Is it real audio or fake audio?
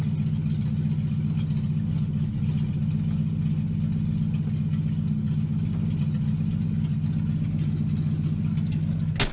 real